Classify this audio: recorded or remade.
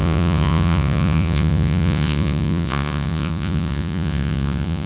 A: remade